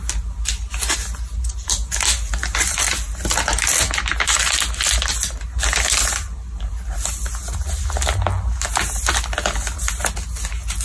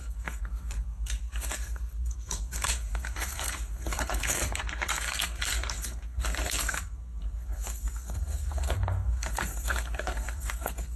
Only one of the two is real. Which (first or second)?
first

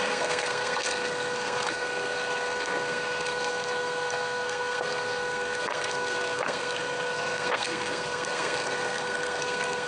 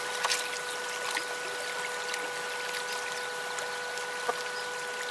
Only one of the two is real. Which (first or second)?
second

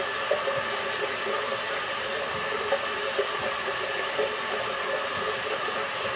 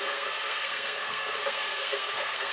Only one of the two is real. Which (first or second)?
first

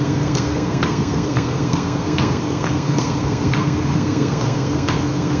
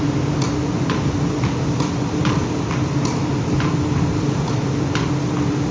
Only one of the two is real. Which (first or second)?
second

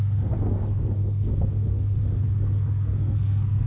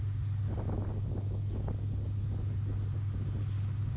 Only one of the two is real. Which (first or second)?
second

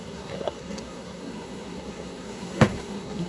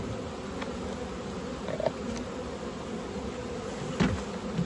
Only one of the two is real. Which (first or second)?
second